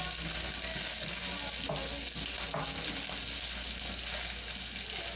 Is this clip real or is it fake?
real